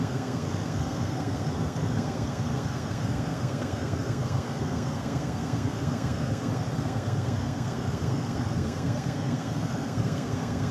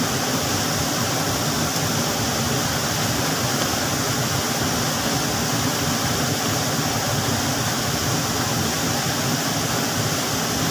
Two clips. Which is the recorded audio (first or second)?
second